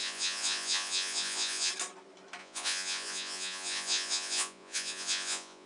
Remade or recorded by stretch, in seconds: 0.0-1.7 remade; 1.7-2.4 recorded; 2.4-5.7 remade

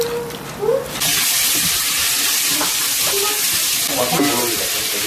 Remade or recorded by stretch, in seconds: 0.0-5.1 recorded

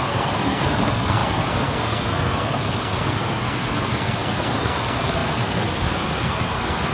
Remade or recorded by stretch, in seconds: 0.0-6.9 remade

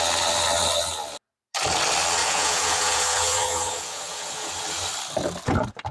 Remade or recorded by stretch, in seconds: 0.0-2.2 recorded; 2.2-4.5 remade; 4.5-5.9 recorded

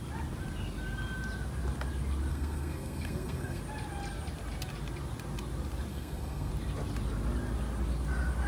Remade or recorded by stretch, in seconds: 0.0-2.3 recorded; 2.3-3.6 remade; 3.6-5.9 recorded; 5.9-6.5 remade; 6.5-8.5 recorded

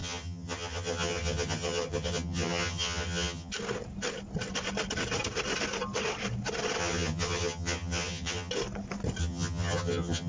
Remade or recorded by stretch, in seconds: 0.0-3.5 remade; 3.5-6.8 recorded; 6.8-8.5 remade; 8.5-9.2 recorded; 9.2-10.3 remade

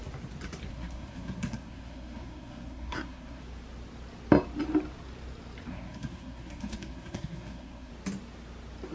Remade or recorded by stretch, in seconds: 0.0-0.7 recorded; 0.7-3.4 remade; 3.4-5.7 recorded; 5.7-7.9 remade; 7.9-8.9 recorded

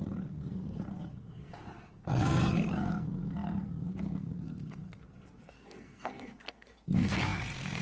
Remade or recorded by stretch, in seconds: 0.0-7.8 remade